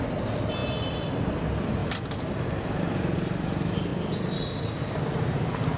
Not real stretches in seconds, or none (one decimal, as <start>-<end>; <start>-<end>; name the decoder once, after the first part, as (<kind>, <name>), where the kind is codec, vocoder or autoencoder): 1.8-2.7 (vocoder, BigVGAN v2); 3.9-5.8